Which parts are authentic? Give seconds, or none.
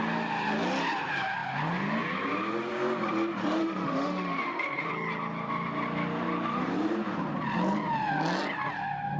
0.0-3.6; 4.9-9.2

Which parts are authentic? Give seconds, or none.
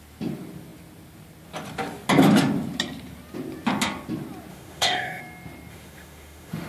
0.0-4.5; 5.2-5.7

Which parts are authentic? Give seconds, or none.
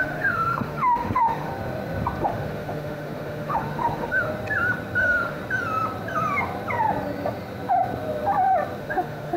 1.5-2.2; 4.3-5.0; 5.4-8.8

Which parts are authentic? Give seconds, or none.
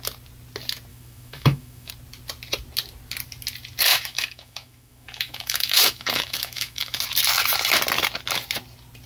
0.0-0.9; 1.9-3.9; 7.0-9.1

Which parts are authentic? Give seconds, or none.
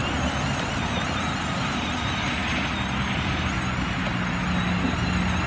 0.0-5.5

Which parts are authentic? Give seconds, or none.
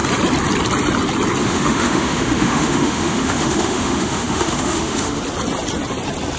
0.0-1.4; 5.2-6.4